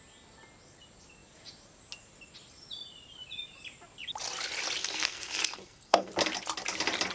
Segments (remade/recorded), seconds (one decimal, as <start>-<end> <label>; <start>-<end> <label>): 0.0-4.8 recorded; 4.8-6.1 remade; 6.1-7.1 recorded